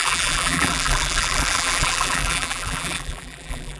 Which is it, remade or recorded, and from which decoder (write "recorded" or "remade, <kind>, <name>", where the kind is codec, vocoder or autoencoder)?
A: remade, vocoder, BigVGAN v2